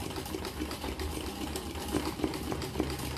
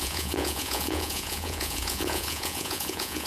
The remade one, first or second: second